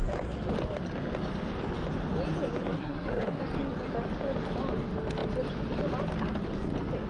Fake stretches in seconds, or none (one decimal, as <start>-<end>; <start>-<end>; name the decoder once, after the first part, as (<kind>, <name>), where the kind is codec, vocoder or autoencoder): 2.7-3.4 (codec, SNAC)